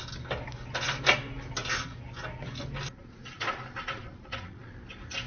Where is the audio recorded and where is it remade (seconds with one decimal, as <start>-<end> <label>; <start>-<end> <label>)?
0.0-3.0 recorded; 3.0-4.7 remade; 4.7-5.3 recorded

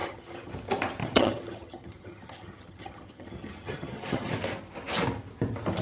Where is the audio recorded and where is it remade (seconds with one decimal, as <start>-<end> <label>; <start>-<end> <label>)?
0.0-0.5 remade; 0.5-1.0 recorded; 1.0-4.3 remade; 4.3-5.8 recorded